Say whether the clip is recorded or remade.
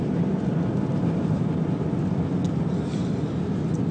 recorded